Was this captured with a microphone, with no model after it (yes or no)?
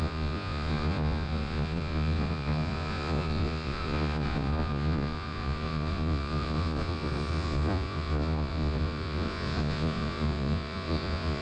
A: no